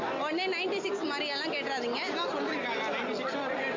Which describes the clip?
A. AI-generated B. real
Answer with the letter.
B